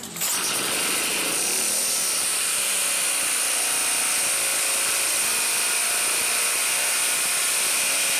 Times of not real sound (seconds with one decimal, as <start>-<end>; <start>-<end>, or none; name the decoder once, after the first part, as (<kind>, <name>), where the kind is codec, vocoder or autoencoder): 1.1-1.8 (vocoder, BigVGAN v2); 2.3-2.8